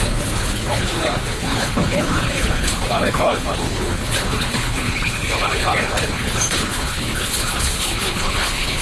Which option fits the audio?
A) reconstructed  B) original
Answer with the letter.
A